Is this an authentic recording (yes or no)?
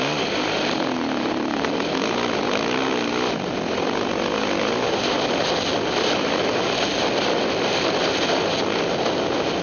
yes